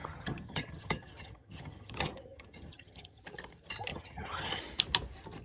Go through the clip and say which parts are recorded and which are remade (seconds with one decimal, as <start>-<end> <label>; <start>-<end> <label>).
0.0-3.2 remade; 3.2-3.9 recorded; 3.9-4.6 remade; 4.6-5.4 recorded